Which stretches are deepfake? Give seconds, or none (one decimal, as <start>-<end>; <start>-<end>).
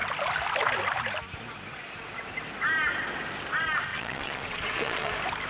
3.9-5.1